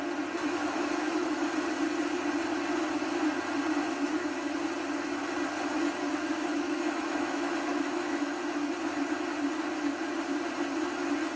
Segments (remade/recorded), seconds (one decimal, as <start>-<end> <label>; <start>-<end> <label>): 0.0-0.4 recorded; 0.4-1.5 remade; 1.5-3.8 recorded; 3.8-4.5 remade; 4.5-6.2 recorded; 6.2-8.7 remade; 8.7-11.4 recorded